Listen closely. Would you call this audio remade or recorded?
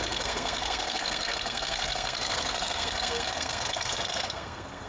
remade